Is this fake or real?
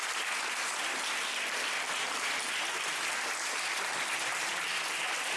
real